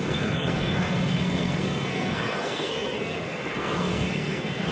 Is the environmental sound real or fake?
fake